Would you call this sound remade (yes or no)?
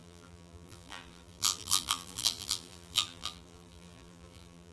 yes